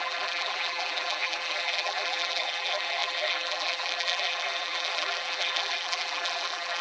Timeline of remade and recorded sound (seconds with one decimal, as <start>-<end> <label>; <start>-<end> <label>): 0.0-6.8 remade

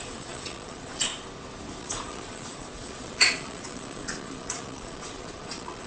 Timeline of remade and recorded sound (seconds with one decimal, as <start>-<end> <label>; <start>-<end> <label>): 0.0-1.1 remade; 1.1-1.8 recorded; 1.8-5.9 remade

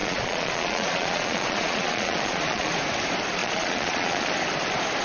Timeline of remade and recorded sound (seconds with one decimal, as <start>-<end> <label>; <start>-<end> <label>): 0.0-2.7 remade; 2.7-3.4 recorded; 3.4-4.3 remade; 4.3-5.0 recorded

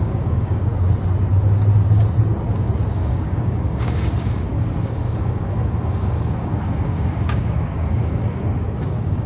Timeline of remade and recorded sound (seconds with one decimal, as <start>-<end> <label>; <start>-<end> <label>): 0.0-0.7 remade; 0.7-2.9 recorded; 2.9-9.3 remade

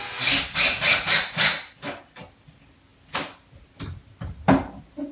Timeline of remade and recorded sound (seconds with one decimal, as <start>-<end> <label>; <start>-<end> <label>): 0.0-2.9 recorded; 2.9-4.3 remade; 4.3-5.1 recorded

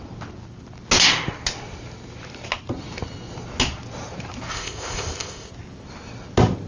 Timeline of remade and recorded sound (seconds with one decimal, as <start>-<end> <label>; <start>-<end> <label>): 0.0-4.5 recorded; 4.5-5.5 remade; 5.5-6.7 recorded